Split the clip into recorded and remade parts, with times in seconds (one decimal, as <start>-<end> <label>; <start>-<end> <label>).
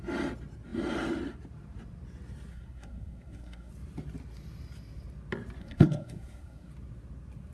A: 0.0-2.5 recorded; 2.5-3.7 remade; 3.7-5.6 recorded; 5.6-6.7 remade; 6.7-7.5 recorded